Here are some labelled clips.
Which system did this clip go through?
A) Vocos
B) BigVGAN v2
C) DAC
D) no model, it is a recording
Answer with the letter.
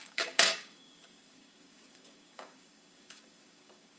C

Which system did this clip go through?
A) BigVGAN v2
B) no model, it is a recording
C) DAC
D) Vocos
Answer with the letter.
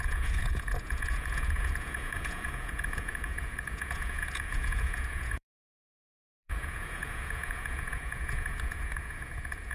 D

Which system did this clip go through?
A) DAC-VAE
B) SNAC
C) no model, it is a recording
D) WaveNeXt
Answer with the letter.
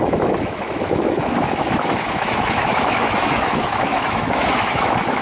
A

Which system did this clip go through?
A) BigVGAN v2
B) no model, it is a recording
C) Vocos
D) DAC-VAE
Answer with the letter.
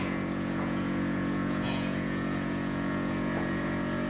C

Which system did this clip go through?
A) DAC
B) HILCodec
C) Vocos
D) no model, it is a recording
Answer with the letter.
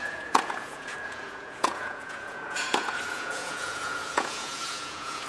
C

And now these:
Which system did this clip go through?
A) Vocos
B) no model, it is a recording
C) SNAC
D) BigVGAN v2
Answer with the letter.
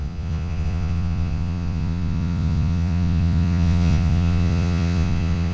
A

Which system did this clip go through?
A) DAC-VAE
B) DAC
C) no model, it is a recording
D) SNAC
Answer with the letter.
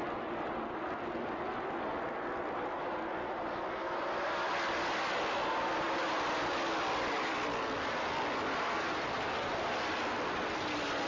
C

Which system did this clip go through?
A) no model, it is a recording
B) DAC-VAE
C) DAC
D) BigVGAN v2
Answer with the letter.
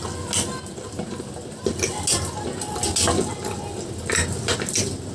A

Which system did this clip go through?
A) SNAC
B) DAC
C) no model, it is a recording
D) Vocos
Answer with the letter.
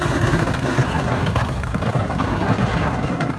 A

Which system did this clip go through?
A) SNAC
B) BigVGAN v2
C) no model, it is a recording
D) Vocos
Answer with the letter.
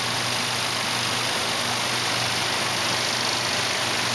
C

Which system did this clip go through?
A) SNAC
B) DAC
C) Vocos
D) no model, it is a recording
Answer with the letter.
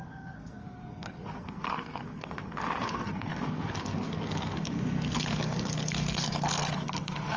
A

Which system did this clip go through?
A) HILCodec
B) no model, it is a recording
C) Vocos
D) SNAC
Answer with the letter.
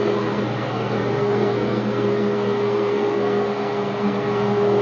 D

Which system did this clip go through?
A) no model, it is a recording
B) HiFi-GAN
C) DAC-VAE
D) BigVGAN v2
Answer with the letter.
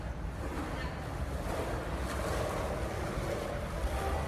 A